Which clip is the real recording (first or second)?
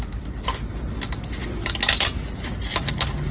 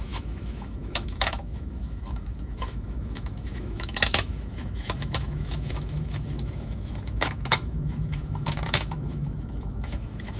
first